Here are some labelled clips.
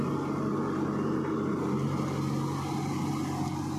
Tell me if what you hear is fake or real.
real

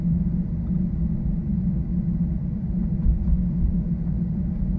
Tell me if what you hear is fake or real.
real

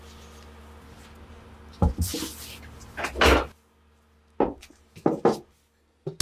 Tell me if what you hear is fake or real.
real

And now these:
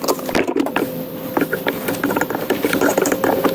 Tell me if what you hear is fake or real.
fake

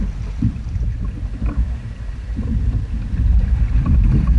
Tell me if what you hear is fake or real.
fake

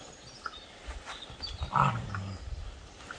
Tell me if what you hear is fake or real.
real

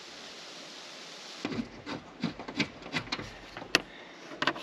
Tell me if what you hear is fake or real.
real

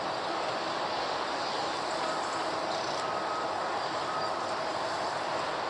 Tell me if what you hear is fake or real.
fake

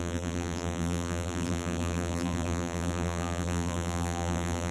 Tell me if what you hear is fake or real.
fake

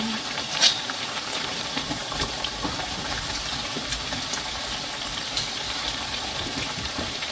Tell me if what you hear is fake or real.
fake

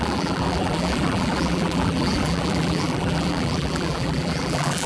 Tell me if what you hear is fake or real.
fake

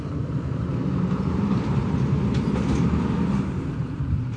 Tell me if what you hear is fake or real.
fake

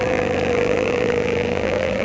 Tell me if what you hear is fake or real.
fake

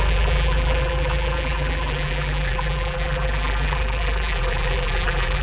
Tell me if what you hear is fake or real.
fake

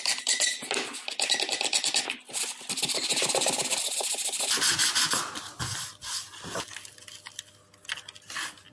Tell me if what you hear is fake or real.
real